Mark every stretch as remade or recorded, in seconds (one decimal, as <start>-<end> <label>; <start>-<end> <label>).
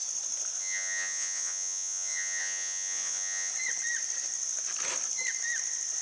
0.0-0.6 recorded; 0.6-3.5 remade; 3.5-6.0 recorded